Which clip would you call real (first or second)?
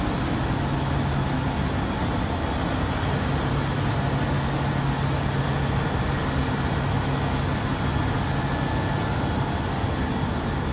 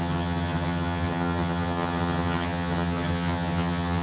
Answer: first